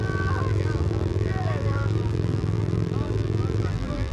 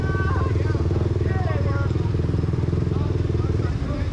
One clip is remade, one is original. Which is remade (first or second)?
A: first